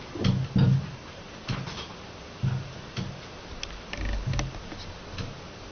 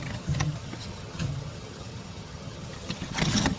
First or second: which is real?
first